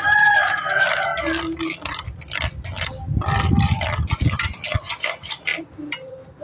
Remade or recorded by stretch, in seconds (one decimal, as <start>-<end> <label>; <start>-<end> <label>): 0.0-1.1 remade; 1.1-4.9 recorded; 4.9-5.5 remade; 5.5-6.4 recorded